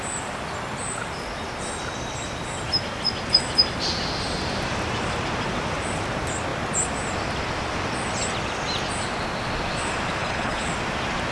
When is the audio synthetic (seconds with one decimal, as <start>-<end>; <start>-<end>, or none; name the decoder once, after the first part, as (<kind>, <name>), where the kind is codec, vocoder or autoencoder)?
10.2-10.7 (codec, HILCodec)